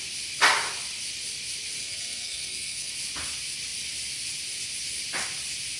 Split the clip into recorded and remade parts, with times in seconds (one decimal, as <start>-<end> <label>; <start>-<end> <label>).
0.0-1.8 recorded; 1.8-2.9 remade; 2.9-5.8 recorded